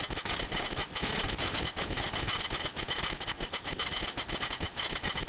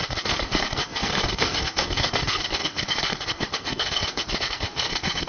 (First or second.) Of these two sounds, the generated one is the second